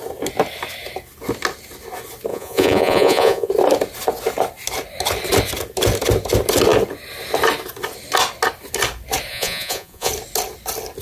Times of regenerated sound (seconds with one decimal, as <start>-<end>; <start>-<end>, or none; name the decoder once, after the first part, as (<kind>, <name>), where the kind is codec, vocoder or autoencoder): 2.3-3.5 (vocoder, Vocos); 9.3-10.1